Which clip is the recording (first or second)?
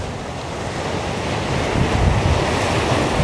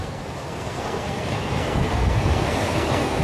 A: first